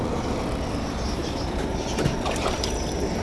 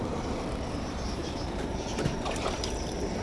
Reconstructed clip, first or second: second